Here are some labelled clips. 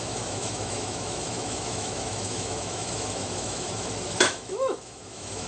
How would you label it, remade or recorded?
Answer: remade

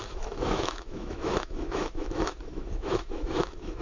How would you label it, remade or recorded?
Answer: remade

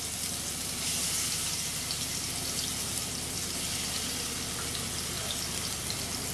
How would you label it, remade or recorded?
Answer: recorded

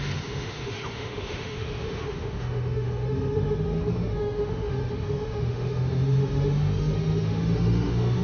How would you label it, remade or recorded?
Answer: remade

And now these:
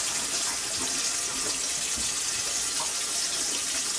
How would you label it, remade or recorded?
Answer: recorded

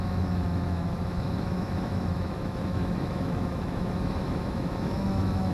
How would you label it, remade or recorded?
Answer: remade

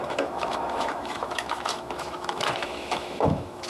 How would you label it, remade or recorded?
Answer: remade